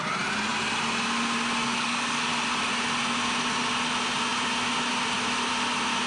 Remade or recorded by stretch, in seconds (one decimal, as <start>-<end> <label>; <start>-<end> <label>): 0.0-1.6 recorded; 1.6-2.3 remade; 2.3-6.1 recorded